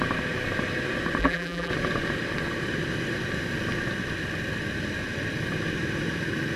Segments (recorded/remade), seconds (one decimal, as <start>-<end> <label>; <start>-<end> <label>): 0.0-1.2 recorded; 1.2-1.7 remade; 1.7-6.6 recorded